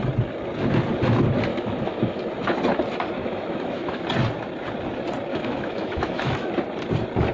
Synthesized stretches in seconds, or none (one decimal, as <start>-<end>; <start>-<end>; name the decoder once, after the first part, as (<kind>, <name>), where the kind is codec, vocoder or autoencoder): 1.5-2.2 (autoencoder, DAC-VAE); 3.2-4.0; 5.3-6.5